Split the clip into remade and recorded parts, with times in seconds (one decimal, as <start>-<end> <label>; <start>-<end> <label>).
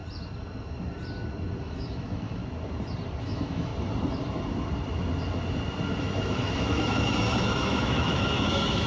0.0-1.6 recorded; 1.6-2.4 remade; 2.4-3.2 recorded; 3.2-3.7 remade; 3.7-6.0 recorded; 6.0-8.9 remade